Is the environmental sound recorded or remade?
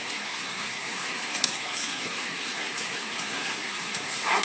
remade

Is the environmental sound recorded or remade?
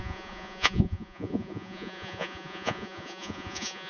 remade